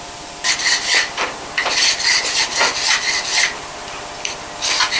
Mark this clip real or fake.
real